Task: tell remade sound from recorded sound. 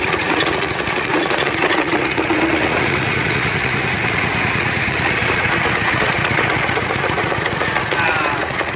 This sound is remade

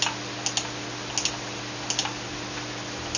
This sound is recorded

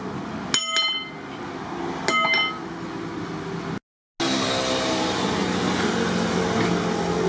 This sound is recorded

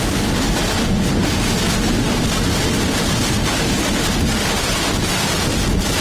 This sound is recorded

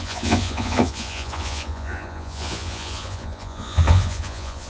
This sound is remade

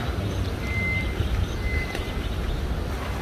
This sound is recorded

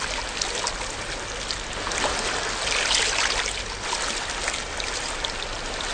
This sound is recorded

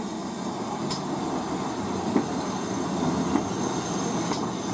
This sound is recorded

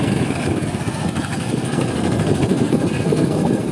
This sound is remade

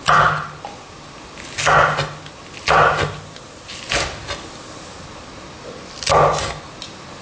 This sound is recorded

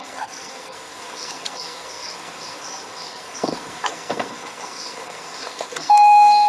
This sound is remade